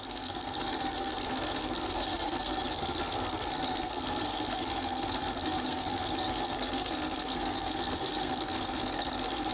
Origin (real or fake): fake